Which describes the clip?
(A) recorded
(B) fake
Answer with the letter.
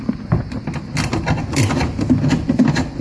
A